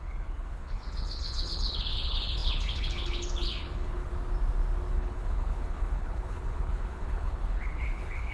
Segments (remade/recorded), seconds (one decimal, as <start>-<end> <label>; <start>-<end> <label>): 0.0-4.1 remade; 4.1-4.9 recorded; 4.9-8.3 remade